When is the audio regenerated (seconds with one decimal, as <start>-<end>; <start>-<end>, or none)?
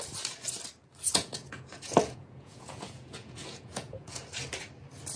1.1-4.2